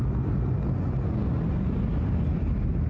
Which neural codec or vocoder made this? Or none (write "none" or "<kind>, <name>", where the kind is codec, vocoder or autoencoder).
none